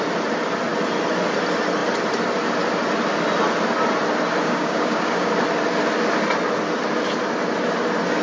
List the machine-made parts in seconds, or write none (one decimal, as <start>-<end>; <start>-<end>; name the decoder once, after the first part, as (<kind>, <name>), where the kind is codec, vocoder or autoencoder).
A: 4.4-5.3 (codec, DAC)